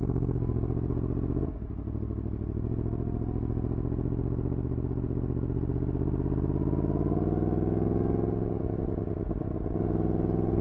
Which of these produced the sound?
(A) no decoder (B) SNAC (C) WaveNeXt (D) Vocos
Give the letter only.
A